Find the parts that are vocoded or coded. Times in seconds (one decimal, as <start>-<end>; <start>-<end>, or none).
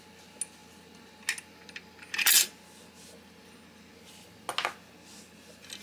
none